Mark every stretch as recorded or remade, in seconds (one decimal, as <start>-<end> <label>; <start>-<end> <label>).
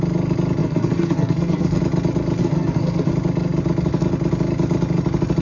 0.0-0.6 recorded; 0.6-1.8 remade; 1.8-2.4 recorded; 2.4-3.1 remade; 3.1-5.4 recorded